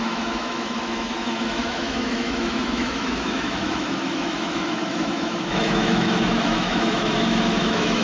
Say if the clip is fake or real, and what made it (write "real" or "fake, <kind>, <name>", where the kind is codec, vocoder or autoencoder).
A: fake, autoencoder, DAC-VAE